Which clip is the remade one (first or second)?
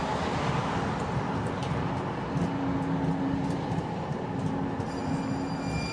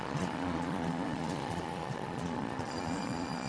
second